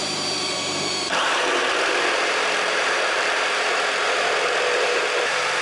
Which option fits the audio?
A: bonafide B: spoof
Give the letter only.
B